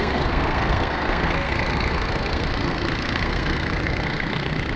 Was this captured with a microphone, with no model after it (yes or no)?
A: no